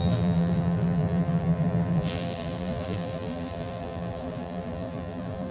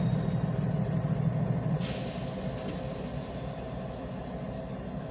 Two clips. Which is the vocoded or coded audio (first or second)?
first